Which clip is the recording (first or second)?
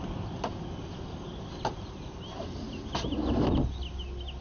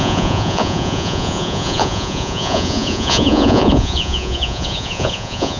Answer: first